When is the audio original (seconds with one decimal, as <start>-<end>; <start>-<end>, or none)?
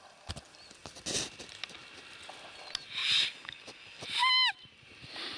0.0-3.0; 4.0-5.4